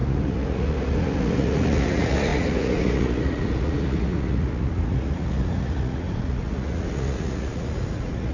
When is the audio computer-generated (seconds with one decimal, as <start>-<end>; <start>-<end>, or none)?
0.0-8.3